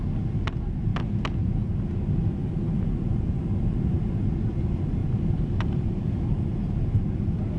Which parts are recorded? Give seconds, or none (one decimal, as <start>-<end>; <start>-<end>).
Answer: 0.0-2.4; 3.4-5.0; 6.1-7.6